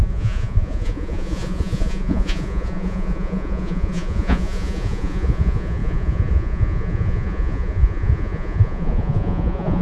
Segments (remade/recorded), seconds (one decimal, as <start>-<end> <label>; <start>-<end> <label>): 0.0-9.8 remade